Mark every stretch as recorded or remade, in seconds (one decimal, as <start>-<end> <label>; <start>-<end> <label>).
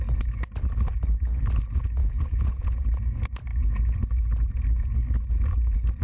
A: 0.0-2.0 recorded; 2.0-3.0 remade; 3.0-6.0 recorded